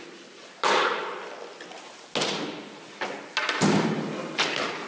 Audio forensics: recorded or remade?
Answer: recorded